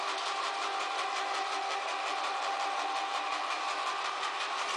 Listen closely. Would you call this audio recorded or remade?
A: remade